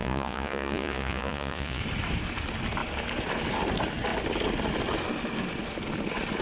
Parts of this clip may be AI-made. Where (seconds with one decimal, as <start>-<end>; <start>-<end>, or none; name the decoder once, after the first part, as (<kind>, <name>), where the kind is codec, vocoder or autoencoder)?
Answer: 0.0-1.8 (vocoder, Vocos)